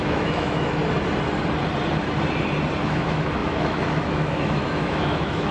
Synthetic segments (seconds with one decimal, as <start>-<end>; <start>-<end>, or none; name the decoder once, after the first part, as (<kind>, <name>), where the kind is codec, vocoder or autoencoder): 0.0-0.8 (autoencoder, DAC-VAE); 2.8-5.5